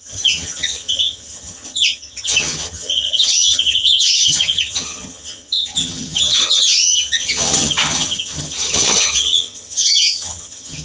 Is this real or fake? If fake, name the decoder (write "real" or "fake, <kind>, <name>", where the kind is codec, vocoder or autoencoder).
fake, vocoder, HiFi-GAN